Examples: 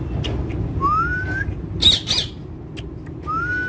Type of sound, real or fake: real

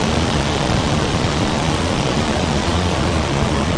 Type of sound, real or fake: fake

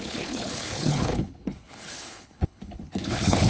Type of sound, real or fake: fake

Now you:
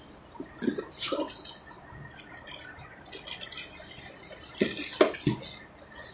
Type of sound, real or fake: fake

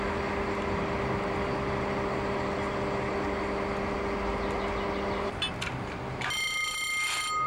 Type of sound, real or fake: real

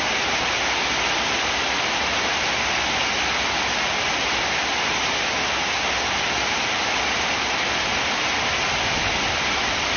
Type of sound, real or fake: real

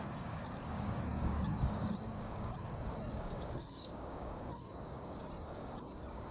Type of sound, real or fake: fake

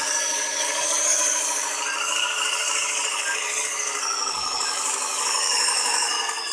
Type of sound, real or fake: fake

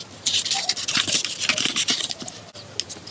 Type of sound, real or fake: real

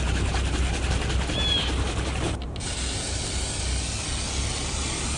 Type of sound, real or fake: real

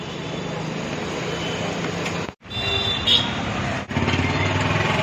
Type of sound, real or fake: real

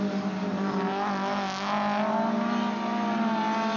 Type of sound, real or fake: real